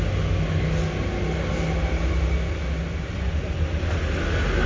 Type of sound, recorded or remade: recorded